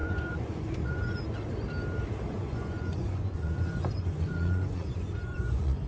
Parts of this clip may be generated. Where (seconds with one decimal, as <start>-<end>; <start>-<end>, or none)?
0.0-1.2; 2.3-5.9